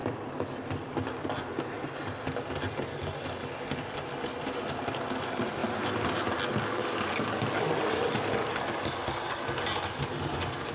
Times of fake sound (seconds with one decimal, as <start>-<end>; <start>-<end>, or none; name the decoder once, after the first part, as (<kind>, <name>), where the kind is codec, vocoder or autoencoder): 0.0-1.1 (vocoder, BigVGAN v2)